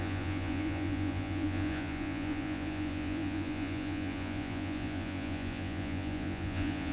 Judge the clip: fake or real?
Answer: fake